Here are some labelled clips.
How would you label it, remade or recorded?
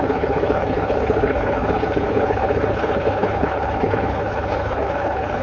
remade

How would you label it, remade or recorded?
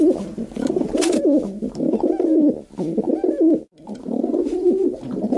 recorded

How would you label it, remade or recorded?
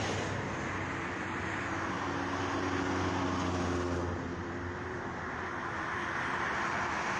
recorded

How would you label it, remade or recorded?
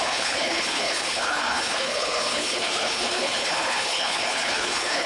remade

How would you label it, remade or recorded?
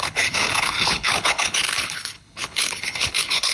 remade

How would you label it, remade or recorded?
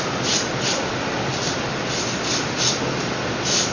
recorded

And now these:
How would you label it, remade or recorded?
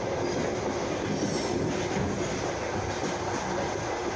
recorded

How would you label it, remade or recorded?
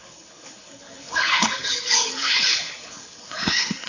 remade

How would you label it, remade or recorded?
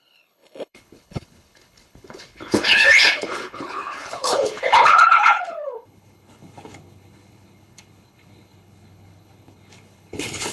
remade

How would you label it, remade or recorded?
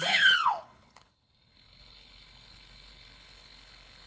remade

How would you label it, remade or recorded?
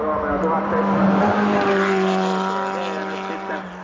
recorded